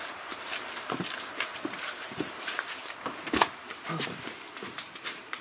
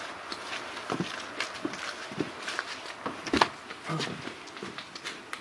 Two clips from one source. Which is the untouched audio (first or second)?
second